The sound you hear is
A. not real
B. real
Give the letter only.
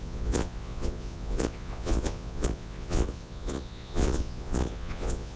A